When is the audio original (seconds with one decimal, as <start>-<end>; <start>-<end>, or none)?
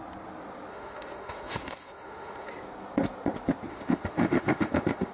0.0-0.7; 2.5-3.7